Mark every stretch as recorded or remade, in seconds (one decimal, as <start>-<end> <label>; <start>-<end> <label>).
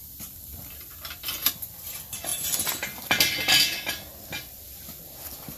0.0-5.6 recorded